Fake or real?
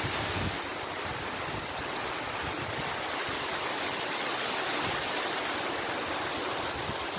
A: real